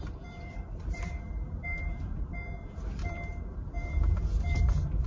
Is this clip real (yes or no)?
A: no